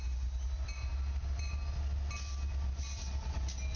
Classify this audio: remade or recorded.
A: recorded